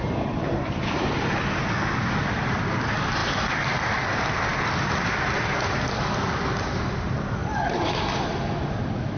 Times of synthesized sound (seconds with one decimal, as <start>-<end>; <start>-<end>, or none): none